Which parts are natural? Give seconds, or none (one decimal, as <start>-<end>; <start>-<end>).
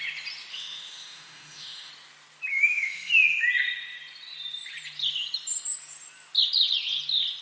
0.0-0.5; 1.9-2.5; 3.1-7.4